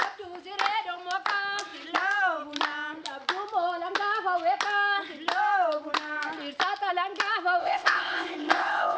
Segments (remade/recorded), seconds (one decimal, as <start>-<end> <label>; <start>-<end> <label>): 0.0-7.6 recorded; 7.6-9.0 remade